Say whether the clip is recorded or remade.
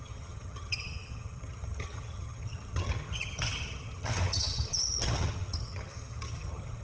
remade